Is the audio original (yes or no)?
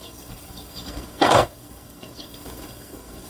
no